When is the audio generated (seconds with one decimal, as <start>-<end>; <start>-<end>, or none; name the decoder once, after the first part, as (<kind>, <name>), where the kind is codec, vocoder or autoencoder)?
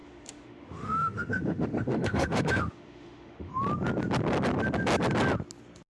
0.0-3.5 (autoencoder, DAC-VAE)